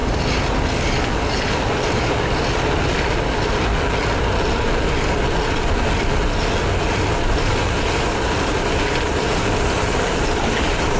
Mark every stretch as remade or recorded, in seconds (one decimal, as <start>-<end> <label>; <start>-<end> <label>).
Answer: 0.0-11.0 recorded